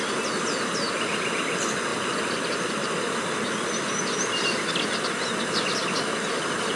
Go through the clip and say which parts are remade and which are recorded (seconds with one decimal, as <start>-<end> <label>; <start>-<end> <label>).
0.0-6.8 recorded